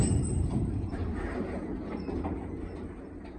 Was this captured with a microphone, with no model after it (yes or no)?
no